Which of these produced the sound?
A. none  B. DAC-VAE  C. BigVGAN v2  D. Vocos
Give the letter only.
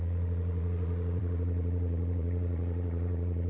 D